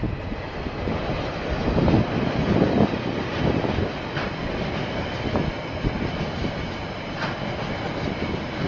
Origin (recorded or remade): recorded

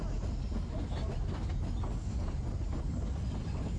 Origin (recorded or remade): recorded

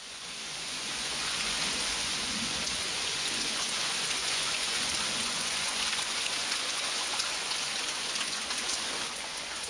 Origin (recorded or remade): remade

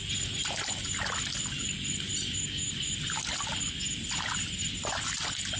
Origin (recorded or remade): recorded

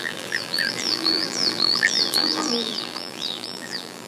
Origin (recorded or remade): remade